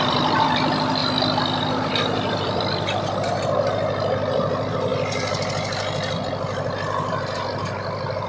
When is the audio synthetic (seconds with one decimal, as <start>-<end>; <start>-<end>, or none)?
0.0-1.0; 1.6-4.9; 6.3-8.3